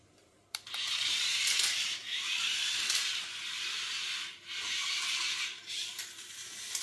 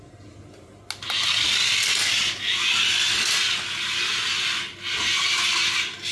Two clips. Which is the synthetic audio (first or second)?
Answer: first